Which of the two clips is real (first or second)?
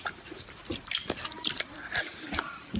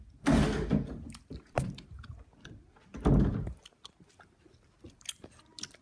second